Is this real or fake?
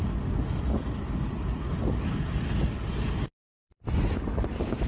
real